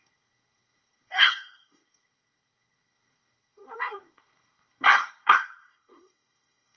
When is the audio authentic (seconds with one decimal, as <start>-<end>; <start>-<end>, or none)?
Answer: none